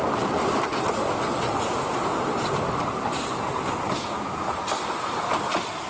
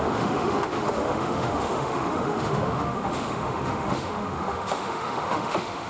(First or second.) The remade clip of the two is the second